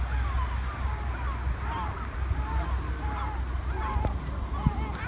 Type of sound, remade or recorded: recorded